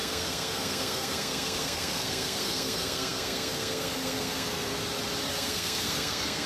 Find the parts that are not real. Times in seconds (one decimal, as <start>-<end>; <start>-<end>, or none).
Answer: 0.0-4.8; 5.3-6.5